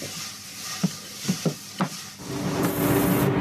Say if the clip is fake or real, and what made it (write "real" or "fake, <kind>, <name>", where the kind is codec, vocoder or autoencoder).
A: real